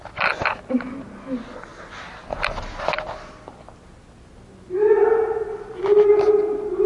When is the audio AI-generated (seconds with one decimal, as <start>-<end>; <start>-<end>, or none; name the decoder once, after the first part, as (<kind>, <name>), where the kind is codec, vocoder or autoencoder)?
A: none